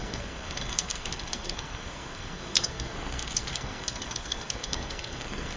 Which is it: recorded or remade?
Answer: remade